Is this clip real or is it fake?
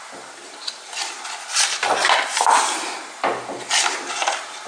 real